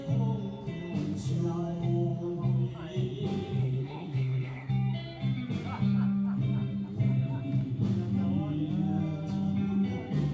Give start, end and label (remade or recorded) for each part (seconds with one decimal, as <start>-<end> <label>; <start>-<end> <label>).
0.0-3.6 recorded; 3.6-4.7 remade; 4.7-10.3 recorded